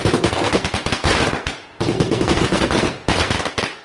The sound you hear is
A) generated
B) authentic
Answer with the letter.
A